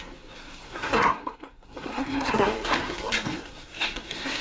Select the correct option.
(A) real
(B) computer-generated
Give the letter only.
B